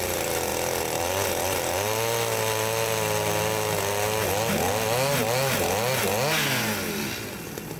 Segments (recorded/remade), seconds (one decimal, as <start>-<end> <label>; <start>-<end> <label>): 0.0-7.8 recorded